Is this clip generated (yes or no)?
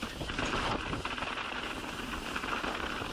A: no